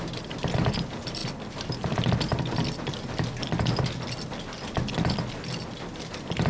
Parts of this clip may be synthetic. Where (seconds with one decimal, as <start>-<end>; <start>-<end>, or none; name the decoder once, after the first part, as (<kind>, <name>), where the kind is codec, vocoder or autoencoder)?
none